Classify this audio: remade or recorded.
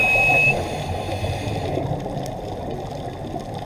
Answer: recorded